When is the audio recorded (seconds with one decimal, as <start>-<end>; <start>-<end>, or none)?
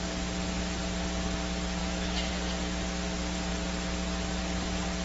0.0-1.8; 2.3-5.0